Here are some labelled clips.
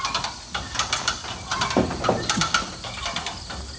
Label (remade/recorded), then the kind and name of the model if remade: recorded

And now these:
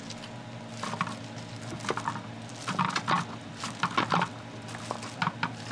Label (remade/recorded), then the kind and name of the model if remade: recorded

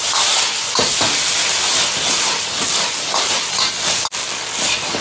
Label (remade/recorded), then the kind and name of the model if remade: recorded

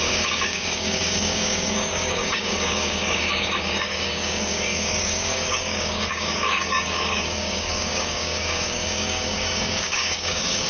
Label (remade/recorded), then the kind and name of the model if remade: remade, codec, DAC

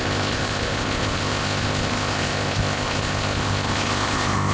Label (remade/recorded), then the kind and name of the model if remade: remade, codec, ZipCodec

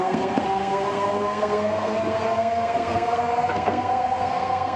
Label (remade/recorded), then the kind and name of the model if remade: remade, codec, SNAC